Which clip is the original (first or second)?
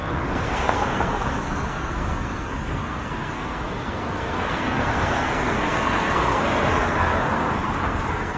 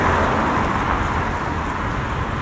second